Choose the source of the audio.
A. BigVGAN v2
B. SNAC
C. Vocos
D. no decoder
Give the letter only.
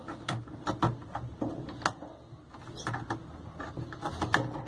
D